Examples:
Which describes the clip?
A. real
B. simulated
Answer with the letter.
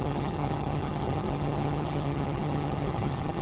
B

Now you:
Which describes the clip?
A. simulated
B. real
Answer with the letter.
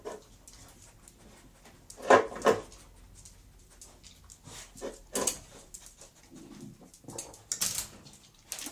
B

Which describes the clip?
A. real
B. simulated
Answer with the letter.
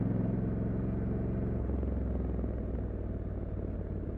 A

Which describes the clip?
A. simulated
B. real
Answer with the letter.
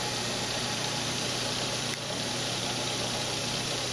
A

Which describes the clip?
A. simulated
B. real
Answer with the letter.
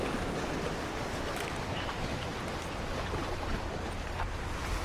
B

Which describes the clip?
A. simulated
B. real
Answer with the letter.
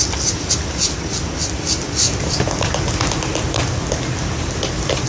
B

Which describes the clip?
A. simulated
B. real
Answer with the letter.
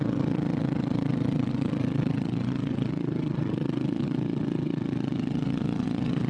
A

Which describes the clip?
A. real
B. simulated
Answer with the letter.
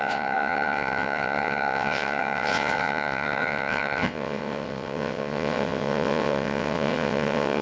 B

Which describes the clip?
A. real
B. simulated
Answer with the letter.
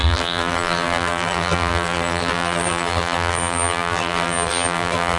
B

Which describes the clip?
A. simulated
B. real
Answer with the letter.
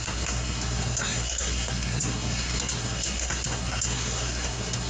A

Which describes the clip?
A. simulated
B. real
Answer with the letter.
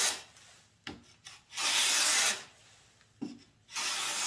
B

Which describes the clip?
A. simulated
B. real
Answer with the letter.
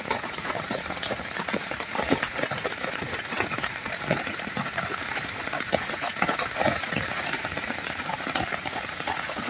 A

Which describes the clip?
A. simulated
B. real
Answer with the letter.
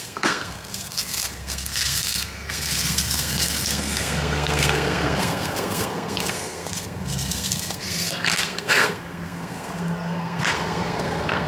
A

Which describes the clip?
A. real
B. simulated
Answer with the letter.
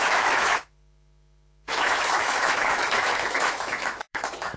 B